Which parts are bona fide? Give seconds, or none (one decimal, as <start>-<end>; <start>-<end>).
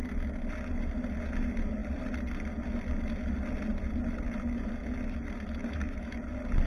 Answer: 0.0-5.6; 6.2-6.7